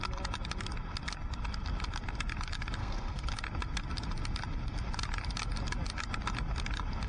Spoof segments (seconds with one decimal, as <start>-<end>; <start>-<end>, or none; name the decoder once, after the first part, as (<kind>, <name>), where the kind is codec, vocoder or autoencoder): 2.8-3.3 (codec, SNAC)